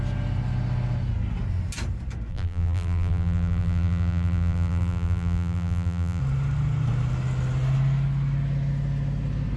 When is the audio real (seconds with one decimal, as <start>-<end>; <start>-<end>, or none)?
0.0-2.3; 6.2-9.6